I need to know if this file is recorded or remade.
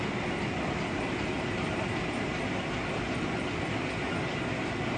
recorded